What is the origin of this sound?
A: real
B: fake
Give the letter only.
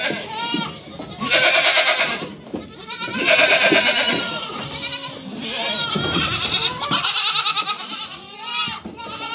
A